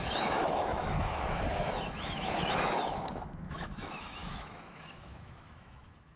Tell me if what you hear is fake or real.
fake